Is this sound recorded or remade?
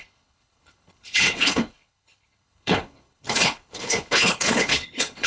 remade